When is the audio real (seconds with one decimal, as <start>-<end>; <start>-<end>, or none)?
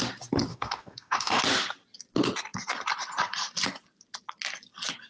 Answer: 0.0-0.5; 1.4-5.1